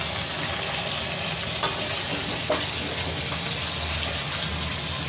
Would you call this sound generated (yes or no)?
no